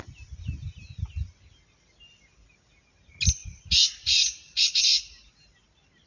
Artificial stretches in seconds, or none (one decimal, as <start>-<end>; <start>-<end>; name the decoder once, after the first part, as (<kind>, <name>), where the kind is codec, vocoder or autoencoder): 3.4-5.1 (vocoder, Vocos)

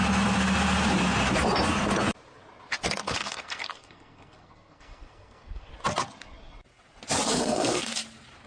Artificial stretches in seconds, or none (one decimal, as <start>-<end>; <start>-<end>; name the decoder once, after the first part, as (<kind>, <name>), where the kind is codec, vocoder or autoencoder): 3.0-5.7 (codec, SNAC); 7.3-7.9